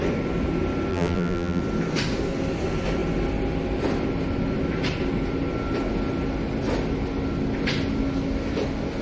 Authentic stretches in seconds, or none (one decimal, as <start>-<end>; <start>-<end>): 0.0-0.9; 1.6-9.0